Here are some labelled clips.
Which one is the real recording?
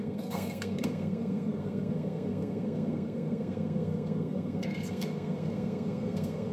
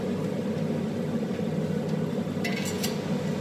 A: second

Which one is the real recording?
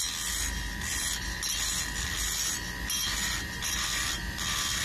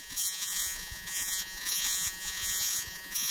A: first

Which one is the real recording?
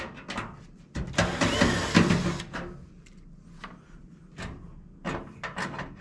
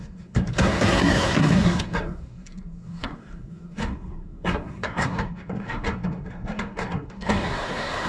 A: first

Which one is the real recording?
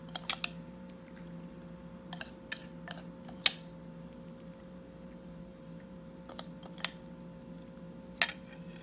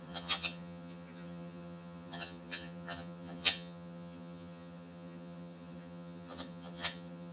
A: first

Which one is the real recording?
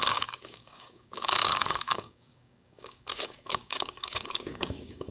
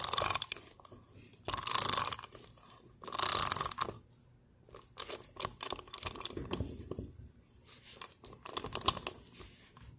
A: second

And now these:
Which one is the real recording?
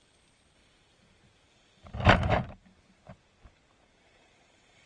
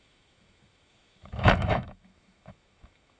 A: first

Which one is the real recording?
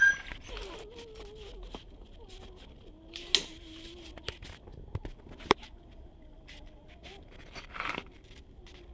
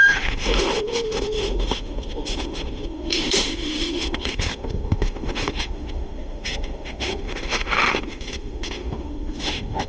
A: first